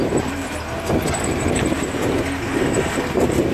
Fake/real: fake